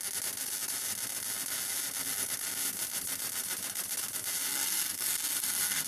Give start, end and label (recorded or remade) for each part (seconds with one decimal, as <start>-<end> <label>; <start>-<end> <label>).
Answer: 0.0-4.5 recorded; 4.5-5.9 remade